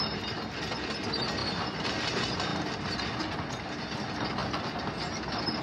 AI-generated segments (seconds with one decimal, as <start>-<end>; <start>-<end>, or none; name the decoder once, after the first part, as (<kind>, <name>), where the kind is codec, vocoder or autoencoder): 1.4-2.1 (vocoder, BigVGAN v2)